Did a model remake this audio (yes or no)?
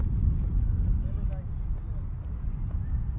no